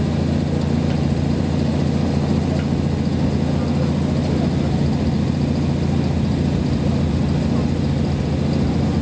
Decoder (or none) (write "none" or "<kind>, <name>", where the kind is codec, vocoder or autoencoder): none